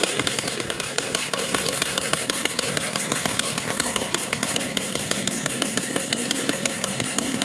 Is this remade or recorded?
remade